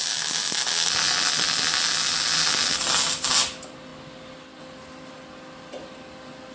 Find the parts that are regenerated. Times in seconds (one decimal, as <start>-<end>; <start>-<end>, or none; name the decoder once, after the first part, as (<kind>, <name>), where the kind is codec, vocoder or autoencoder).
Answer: none

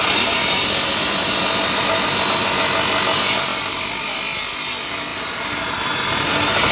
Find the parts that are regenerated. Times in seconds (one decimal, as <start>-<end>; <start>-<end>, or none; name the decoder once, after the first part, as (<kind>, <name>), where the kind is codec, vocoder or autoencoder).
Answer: none

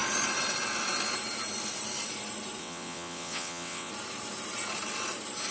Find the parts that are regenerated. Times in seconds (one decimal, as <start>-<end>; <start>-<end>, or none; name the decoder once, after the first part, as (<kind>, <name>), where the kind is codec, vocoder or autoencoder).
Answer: 2.6-3.9 (vocoder, WaveNeXt)

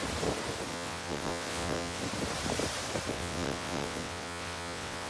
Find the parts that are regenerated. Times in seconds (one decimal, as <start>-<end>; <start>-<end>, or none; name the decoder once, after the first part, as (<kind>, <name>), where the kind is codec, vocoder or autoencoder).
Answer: 0.7-2.0 (vocoder, WaveNeXt); 3.1-5.1

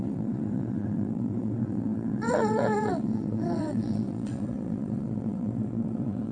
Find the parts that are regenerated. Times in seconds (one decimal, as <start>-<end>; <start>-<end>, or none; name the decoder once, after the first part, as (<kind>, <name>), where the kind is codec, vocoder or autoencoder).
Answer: 0.0-6.3 (vocoder, WaveNeXt)

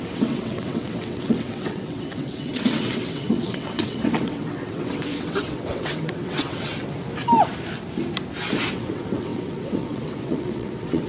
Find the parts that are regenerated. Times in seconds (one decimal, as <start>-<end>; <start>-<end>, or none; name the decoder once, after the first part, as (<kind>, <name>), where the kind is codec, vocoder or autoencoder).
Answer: 0.0-6.7 (vocoder, WaveNeXt); 8.5-11.1

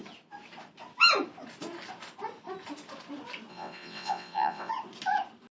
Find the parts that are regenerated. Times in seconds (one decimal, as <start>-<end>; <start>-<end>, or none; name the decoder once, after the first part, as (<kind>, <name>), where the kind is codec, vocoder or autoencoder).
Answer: 3.5-4.7 (vocoder, WaveNeXt)

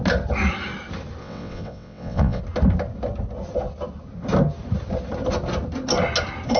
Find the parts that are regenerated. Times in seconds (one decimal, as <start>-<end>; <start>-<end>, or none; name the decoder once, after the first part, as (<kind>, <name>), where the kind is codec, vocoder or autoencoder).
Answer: 1.2-2.4 (vocoder, WaveNeXt)